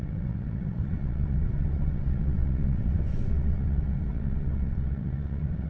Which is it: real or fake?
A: fake